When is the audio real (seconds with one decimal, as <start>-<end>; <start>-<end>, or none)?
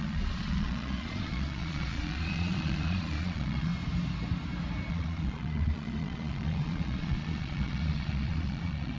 3.7-4.9